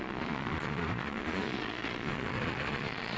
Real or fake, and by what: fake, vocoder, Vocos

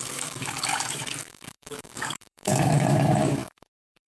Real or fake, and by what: fake, codec, DAC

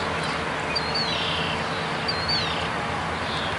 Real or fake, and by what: real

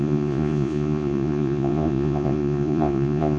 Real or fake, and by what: fake, vocoder, Vocos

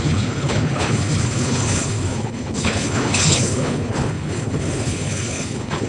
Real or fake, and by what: fake, codec, HILCodec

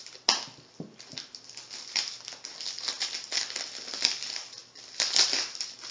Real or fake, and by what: real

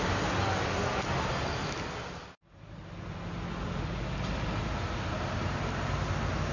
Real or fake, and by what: real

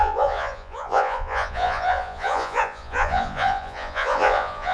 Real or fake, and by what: fake, vocoder, Vocos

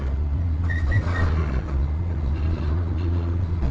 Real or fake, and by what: fake, vocoder, Vocos